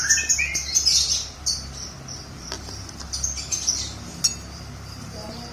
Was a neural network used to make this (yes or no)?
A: no